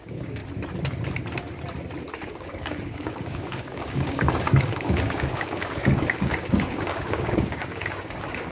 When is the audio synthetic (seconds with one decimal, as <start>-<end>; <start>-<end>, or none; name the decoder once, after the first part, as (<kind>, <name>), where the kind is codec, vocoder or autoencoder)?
0.0-0.4 (codec, DAC); 2.3-8.5